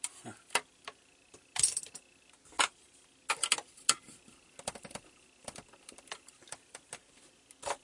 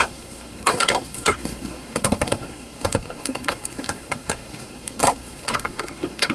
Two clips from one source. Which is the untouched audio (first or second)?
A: first